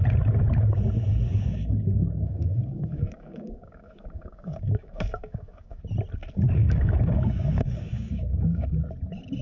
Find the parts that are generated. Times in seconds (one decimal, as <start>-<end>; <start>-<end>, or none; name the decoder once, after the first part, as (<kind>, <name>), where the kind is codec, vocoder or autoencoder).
1.3-5.8 (codec, DAC); 6.6-8.8